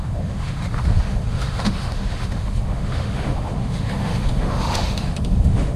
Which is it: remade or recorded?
remade